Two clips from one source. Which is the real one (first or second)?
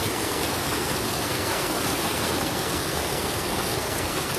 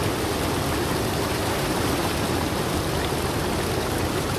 second